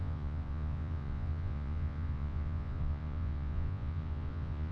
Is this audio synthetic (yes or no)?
yes